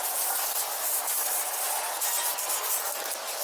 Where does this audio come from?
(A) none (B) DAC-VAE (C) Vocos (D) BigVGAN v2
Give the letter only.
D